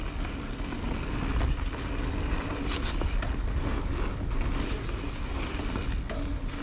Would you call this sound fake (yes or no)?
no